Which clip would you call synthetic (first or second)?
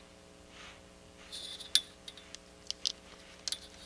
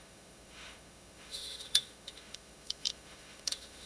second